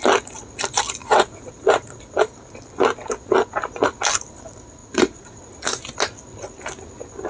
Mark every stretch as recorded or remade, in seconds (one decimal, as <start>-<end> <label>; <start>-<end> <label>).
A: 0.0-1.0 recorded; 1.0-2.0 remade; 2.0-4.8 recorded; 4.8-5.4 remade; 5.4-7.3 recorded